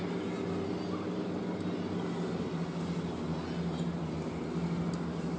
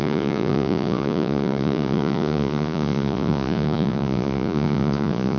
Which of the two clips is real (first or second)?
first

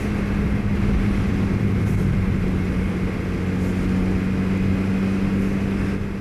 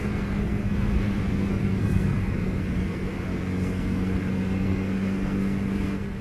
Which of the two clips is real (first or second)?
first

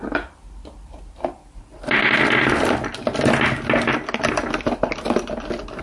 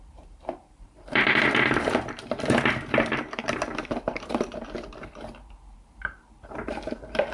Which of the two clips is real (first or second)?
first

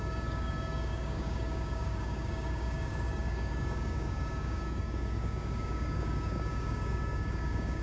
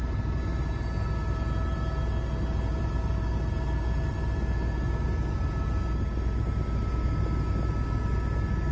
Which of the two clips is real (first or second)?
second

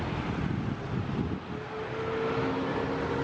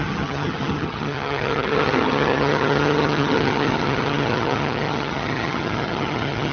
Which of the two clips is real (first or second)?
first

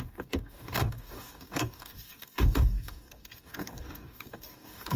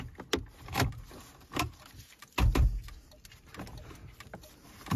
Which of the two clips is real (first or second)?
second